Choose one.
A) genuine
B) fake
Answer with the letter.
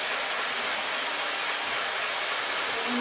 A